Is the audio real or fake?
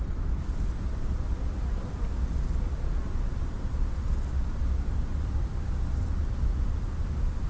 real